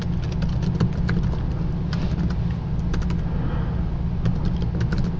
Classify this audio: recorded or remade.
recorded